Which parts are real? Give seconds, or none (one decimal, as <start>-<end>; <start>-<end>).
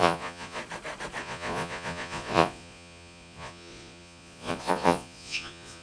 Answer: 0.6-1.2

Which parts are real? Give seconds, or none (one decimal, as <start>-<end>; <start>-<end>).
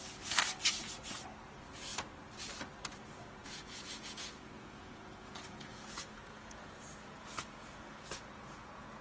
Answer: 0.0-3.4